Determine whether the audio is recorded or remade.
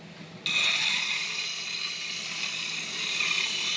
recorded